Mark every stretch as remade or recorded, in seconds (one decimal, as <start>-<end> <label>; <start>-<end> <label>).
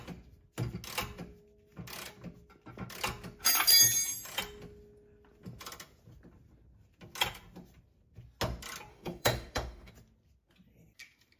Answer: 0.0-8.9 recorded; 8.9-9.9 remade; 9.9-11.4 recorded